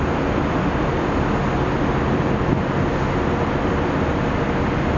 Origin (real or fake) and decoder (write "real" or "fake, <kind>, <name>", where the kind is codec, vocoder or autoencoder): real